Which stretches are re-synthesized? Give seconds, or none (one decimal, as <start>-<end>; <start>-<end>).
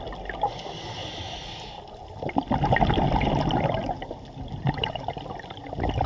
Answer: none